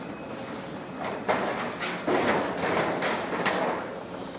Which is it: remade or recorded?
recorded